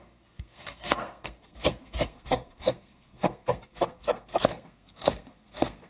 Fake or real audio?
fake